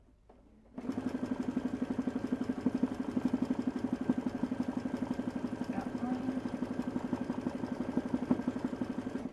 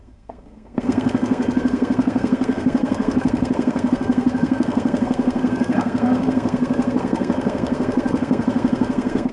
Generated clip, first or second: second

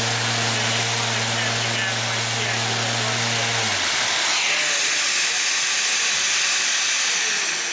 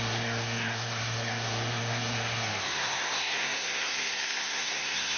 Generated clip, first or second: second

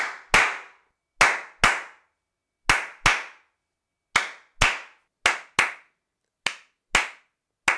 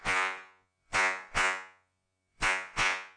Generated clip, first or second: second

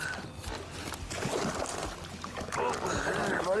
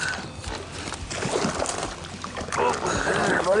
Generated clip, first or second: second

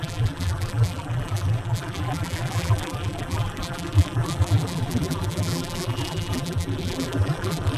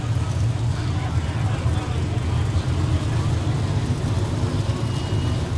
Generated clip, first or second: first